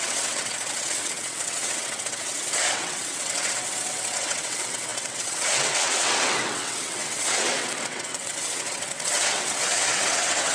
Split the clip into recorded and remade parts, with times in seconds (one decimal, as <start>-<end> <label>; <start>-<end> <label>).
0.0-10.5 remade